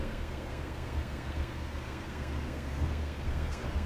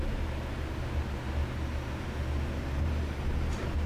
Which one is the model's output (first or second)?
first